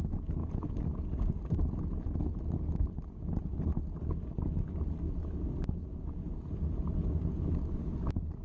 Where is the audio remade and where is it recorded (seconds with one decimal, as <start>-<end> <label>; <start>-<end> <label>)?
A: 0.0-8.4 recorded

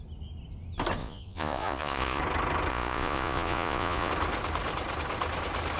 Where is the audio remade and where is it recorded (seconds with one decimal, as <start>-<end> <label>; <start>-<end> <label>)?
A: 0.0-1.0 recorded; 1.0-2.2 remade; 2.2-2.7 recorded; 2.7-4.1 remade; 4.1-5.8 recorded

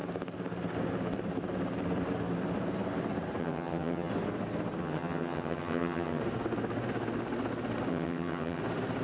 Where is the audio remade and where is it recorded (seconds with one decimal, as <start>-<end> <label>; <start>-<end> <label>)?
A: 0.0-3.4 recorded; 3.4-4.1 remade; 4.1-4.8 recorded; 4.8-6.2 remade; 6.2-7.9 recorded; 7.9-8.6 remade; 8.6-9.0 recorded

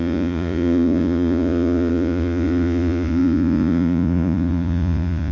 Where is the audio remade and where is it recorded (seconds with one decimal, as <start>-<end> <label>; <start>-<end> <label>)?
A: 0.0-5.3 remade